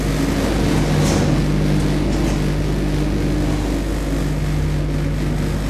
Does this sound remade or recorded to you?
recorded